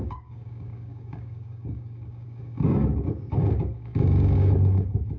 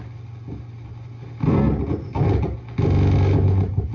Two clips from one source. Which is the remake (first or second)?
first